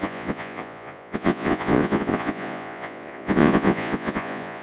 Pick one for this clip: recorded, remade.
remade